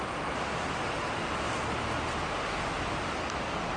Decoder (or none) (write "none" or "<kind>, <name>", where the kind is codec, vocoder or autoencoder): none